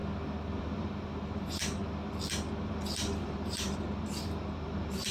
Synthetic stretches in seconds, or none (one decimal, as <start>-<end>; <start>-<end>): 0.6-1.8; 3.2-5.1